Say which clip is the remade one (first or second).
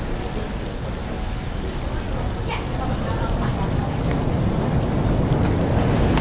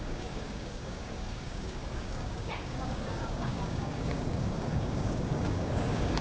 second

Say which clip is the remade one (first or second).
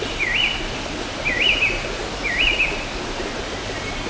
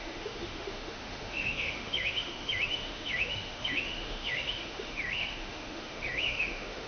second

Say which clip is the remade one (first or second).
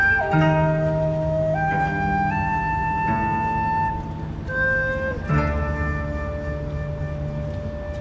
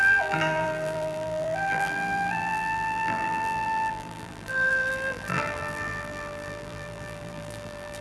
second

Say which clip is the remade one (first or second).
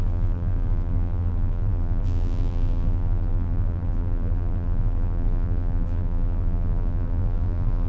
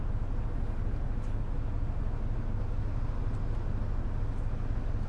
first